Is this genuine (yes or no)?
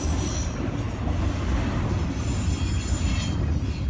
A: yes